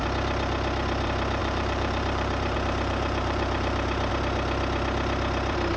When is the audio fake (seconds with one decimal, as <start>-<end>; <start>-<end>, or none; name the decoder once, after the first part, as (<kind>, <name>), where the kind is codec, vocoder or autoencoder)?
1.4-4.1 (vocoder, BigVGAN v2)